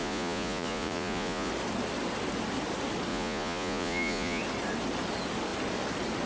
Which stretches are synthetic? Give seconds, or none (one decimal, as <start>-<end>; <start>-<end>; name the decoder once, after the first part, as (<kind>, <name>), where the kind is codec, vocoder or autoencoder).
0.0-1.5 (vocoder, Vocos); 3.1-4.4